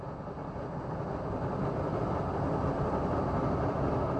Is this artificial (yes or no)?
no